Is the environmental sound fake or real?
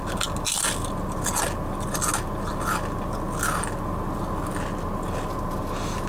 real